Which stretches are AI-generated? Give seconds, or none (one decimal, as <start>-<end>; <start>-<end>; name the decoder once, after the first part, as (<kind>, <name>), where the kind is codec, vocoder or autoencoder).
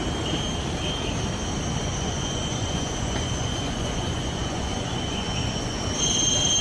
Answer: 1.8-5.8 (vocoder, Vocos)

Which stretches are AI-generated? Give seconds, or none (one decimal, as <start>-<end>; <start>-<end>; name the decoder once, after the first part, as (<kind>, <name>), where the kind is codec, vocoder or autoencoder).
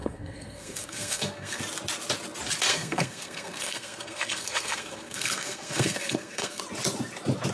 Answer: 0.0-1.6 (codec, SNAC); 2.7-6.6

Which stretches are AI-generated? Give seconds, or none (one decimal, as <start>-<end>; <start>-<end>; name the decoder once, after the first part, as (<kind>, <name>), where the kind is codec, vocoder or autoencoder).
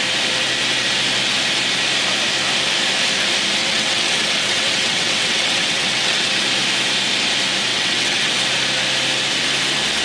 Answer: 3.6-6.3 (vocoder, WaveNeXt); 7.7-8.3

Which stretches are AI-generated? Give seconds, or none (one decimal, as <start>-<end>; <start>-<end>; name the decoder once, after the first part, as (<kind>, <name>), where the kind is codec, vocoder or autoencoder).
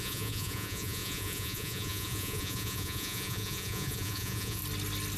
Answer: 0.0-4.6 (vocoder, Vocos)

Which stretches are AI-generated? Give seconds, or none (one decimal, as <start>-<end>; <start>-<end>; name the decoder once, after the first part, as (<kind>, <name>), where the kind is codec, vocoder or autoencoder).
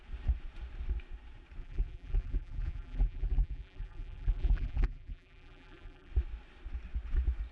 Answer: 1.6-6.1 (vocoder, BigVGAN v2)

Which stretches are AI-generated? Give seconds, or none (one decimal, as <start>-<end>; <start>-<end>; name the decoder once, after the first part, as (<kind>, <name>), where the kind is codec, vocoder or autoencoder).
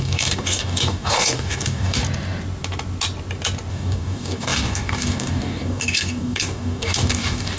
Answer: 0.0-2.0 (codec, DAC); 3.7-7.6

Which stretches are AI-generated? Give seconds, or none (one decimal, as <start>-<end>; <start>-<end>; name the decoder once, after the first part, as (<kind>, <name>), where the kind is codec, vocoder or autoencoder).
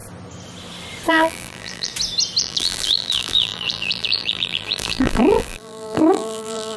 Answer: 1.1-1.9 (vocoder, BigVGAN v2); 2.4-6.8